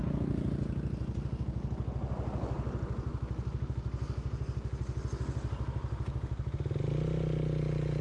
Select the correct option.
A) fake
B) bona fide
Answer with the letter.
B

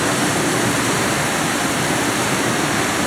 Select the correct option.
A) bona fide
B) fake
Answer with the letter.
B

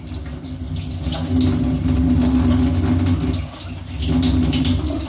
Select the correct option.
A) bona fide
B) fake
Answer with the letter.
A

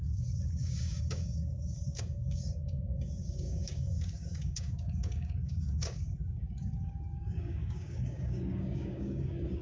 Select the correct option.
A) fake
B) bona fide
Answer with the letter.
A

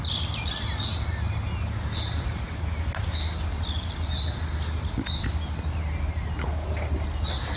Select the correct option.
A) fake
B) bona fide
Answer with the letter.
B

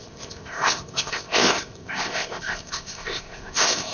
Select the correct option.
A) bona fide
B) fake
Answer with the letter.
B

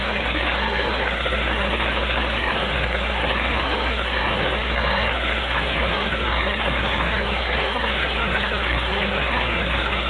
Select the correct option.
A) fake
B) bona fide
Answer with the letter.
A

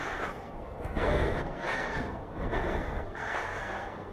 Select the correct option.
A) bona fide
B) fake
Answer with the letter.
B